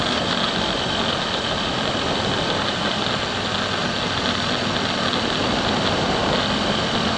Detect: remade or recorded recorded